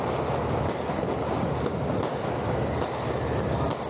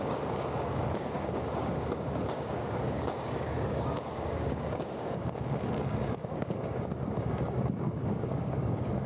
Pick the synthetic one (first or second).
second